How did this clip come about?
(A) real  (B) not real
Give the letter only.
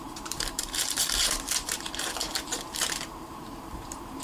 B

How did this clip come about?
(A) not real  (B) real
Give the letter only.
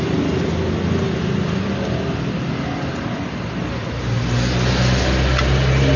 B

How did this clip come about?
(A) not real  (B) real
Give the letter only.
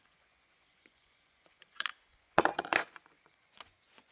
A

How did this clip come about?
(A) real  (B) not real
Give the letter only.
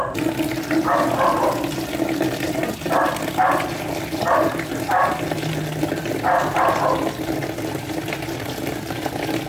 B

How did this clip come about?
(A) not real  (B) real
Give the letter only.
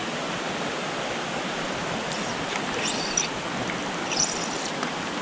B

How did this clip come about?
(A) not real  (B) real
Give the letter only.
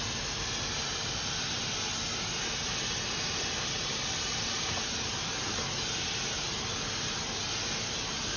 B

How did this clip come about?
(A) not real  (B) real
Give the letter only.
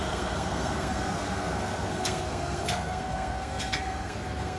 A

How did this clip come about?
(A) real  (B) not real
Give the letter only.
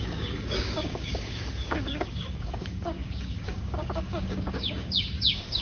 B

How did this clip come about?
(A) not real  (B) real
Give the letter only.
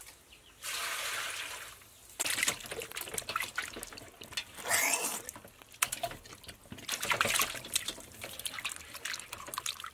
B